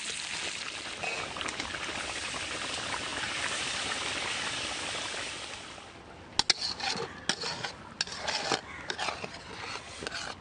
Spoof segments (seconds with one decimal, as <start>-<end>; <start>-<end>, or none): none